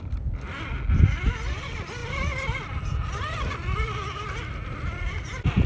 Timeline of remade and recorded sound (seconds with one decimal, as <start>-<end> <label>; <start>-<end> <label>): 0.0-5.7 recorded